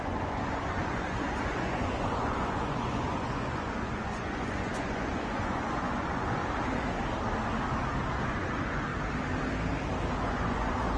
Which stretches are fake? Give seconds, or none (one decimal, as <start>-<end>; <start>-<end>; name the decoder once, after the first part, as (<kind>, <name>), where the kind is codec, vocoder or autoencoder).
0.0-6.4 (vocoder, Vocos); 8.1-8.9; 10.2-11.0